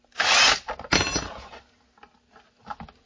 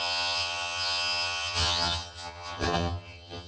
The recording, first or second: first